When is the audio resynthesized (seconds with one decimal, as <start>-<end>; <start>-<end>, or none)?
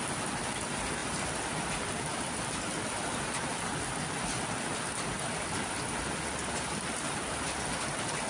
none